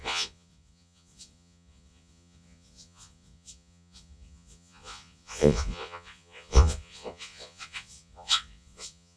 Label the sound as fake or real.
fake